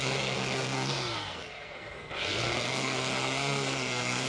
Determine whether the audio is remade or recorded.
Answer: remade